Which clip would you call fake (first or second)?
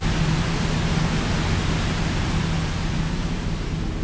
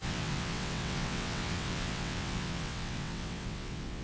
second